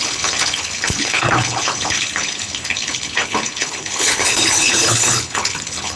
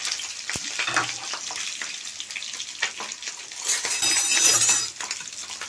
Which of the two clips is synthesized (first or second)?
first